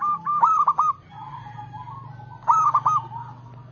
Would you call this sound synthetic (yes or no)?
no